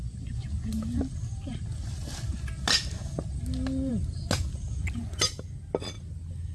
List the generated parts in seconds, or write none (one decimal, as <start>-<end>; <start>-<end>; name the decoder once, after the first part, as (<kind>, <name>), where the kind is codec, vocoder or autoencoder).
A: none